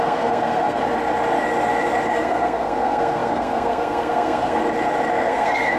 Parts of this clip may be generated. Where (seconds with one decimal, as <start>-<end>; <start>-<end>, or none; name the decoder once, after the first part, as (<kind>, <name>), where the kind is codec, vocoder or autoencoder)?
0.0-0.8 (codec, SNAC); 2.1-4.6; 5.1-5.8